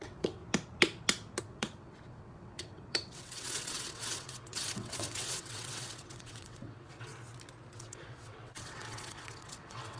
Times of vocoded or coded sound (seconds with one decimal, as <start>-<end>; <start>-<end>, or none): 0.0-0.4; 1.4-7.1; 7.7-10.0